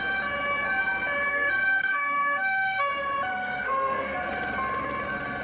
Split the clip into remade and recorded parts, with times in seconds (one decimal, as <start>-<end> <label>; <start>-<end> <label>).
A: 0.0-1.3 recorded; 1.3-2.9 remade; 2.9-3.3 recorded; 3.3-4.3 remade; 4.3-5.4 recorded